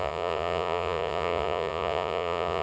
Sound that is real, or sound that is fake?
fake